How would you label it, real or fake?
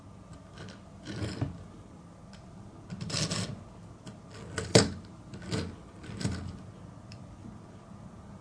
real